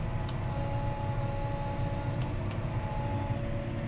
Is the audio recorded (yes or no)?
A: yes